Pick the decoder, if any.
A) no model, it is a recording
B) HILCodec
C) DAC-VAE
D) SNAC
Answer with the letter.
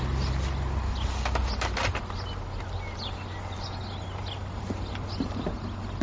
A